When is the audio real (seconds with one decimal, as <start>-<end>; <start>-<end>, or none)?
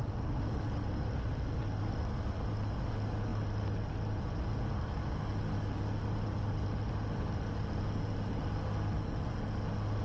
0.0-10.0